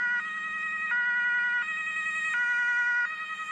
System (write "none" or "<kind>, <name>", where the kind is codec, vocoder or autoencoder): none